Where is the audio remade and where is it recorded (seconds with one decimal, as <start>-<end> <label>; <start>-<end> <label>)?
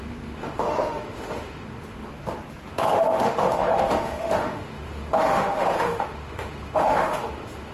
0.0-2.1 remade; 2.1-2.7 recorded; 2.7-7.7 remade